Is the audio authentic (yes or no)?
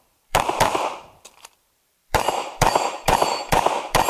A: no